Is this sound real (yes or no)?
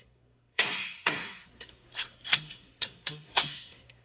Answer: no